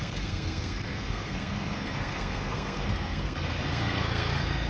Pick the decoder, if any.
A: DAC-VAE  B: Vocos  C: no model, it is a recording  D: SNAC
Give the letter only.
D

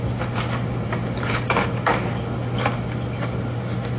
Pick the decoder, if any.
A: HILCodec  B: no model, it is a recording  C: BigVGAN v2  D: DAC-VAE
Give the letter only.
B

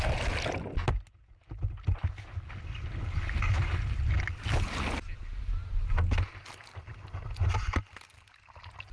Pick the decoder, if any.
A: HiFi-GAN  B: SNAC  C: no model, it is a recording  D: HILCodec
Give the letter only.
C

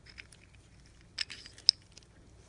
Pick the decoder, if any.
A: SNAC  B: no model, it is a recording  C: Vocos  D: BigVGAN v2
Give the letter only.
B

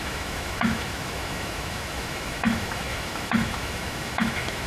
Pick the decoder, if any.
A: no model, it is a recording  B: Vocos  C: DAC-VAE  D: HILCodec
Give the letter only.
C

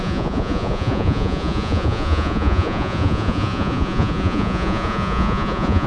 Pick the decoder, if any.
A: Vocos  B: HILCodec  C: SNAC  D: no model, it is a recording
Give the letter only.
A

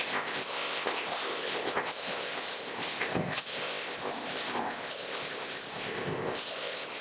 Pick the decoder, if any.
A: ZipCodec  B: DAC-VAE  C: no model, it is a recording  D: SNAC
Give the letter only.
A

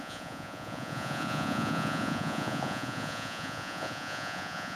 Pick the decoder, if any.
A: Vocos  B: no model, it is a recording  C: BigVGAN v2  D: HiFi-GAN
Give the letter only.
A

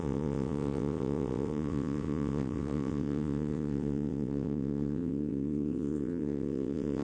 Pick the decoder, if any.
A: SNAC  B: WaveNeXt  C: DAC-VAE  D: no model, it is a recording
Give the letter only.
B